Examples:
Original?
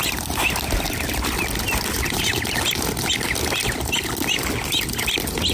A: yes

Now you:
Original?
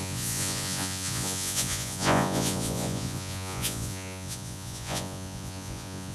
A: no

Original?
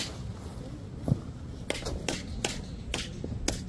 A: yes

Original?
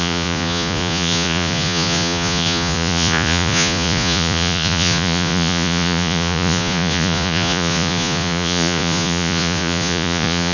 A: no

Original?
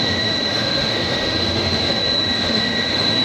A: no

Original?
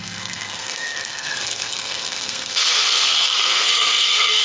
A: no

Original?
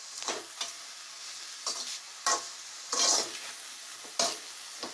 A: yes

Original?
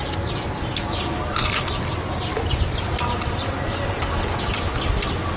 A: yes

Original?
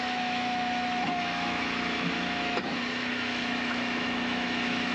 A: no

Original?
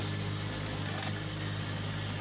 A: yes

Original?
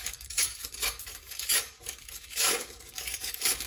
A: no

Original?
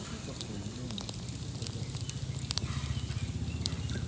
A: yes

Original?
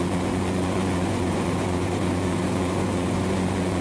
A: no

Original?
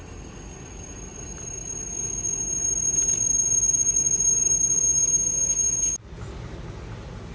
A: yes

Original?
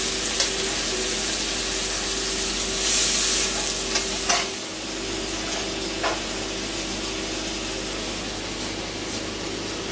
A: yes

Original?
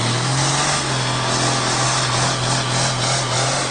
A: yes